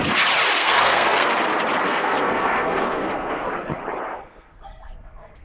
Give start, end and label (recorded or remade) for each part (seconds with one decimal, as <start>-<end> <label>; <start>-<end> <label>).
0.0-0.6 recorded; 0.6-1.3 remade; 1.3-1.9 recorded; 1.9-3.5 remade; 3.5-4.1 recorded; 4.1-5.4 remade